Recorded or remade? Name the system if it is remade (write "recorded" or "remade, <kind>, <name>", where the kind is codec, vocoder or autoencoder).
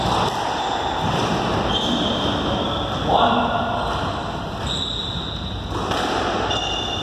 recorded